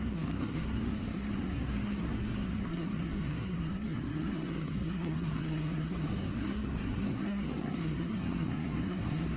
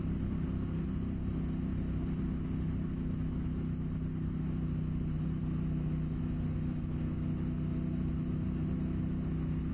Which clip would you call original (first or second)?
second